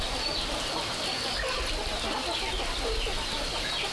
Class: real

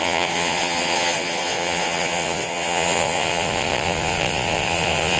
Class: fake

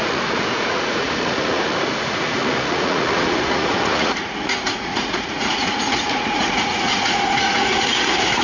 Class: fake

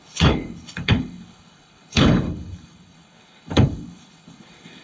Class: fake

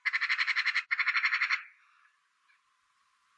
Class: real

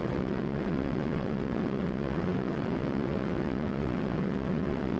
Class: fake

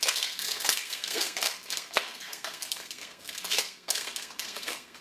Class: fake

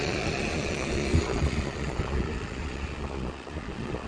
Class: fake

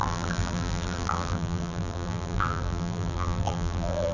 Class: fake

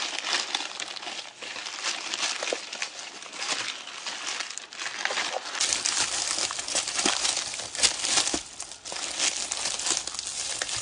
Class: real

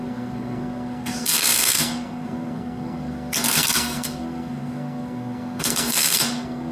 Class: fake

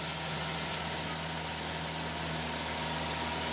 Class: real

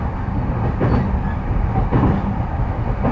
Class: real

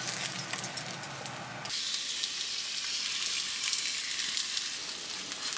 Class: real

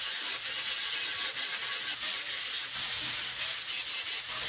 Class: real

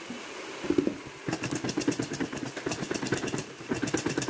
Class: real